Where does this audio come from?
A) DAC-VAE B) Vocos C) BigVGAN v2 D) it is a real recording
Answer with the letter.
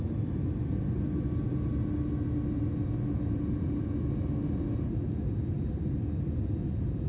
D